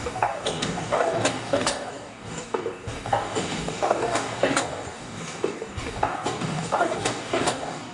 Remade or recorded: remade